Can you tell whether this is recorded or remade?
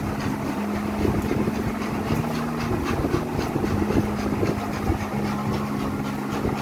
recorded